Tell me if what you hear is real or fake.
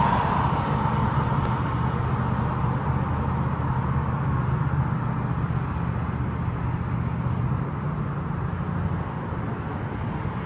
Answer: real